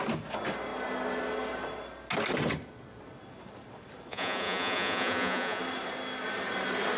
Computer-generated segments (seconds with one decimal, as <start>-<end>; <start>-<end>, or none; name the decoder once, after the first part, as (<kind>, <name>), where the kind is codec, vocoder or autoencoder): 4.1-5.6 (vocoder, Vocos)